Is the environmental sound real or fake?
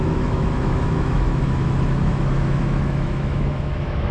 fake